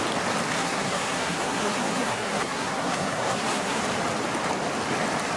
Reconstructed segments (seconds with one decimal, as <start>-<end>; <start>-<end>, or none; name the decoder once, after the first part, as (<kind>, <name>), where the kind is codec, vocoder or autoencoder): 0.6-3.8 (codec, SNAC)